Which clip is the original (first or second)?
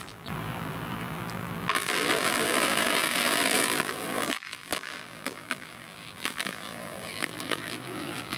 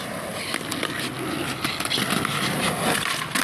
second